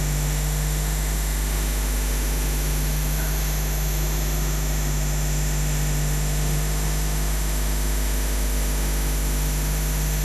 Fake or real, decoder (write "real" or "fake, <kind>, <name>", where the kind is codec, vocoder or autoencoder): fake, autoencoder, DAC-VAE